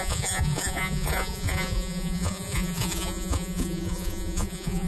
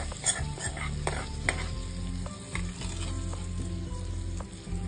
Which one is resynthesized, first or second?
first